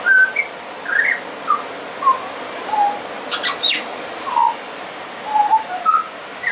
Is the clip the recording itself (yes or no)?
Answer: yes